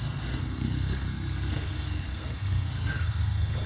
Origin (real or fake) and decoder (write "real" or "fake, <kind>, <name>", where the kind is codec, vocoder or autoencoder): fake, codec, SNAC